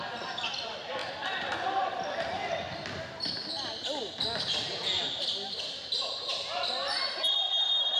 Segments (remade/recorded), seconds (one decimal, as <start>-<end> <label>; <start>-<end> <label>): 0.0-1.0 recorded; 1.0-3.5 remade; 3.5-8.0 recorded